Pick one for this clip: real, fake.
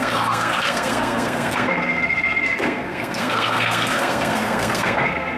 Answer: fake